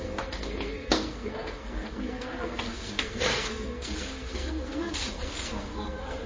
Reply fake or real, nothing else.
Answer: fake